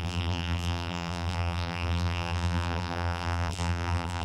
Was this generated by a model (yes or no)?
yes